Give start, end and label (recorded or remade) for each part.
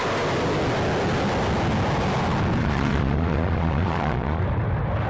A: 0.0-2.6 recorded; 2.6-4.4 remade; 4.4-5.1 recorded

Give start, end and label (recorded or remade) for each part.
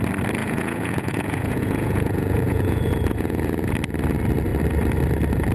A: 0.0-0.4 recorded; 0.4-3.7 remade; 3.7-5.5 recorded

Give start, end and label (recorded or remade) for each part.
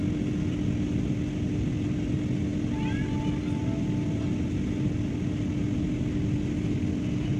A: 0.0-7.4 recorded